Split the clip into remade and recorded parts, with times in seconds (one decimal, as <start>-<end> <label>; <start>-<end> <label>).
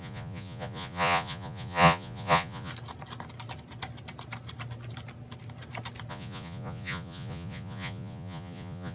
0.0-2.7 remade; 2.7-6.1 recorded; 6.1-8.9 remade